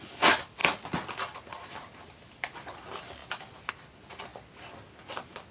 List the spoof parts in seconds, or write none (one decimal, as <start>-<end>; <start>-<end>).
none